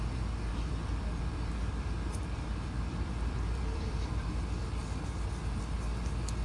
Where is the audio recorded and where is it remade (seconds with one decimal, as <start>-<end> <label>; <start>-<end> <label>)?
0.0-0.5 recorded; 0.5-4.3 remade; 4.3-4.8 recorded; 4.8-5.6 remade; 5.6-6.4 recorded